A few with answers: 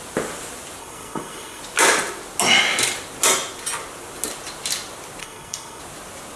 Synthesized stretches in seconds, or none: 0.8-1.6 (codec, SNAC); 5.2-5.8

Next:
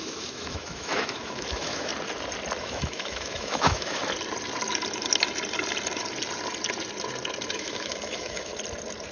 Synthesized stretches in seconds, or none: 0.0-1.9 (autoencoder, DAC-VAE); 2.6-4.0; 7.5-8.5

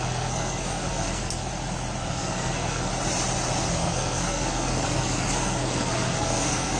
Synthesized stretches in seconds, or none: 0.0-1.5 (codec, SNAC); 2.1-2.9; 3.7-6.8